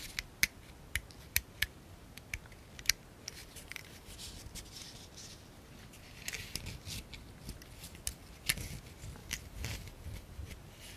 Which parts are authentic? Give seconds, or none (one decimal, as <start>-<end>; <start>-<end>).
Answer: 0.0-3.4; 4.1-9.2; 10.4-11.0